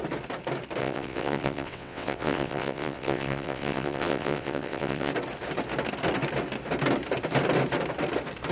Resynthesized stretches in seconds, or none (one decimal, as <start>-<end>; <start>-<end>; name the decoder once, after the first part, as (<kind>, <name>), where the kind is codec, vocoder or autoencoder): 0.8-5.1 (vocoder, WaveNeXt)